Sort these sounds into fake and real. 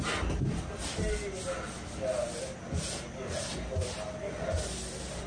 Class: real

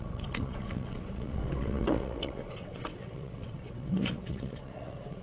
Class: fake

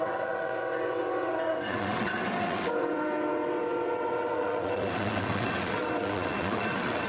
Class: fake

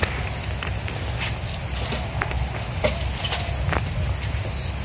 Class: real